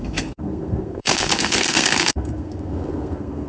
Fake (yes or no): yes